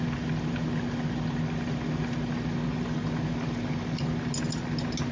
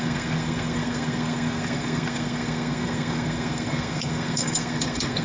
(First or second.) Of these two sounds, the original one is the first